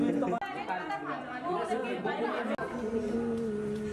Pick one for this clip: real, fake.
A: real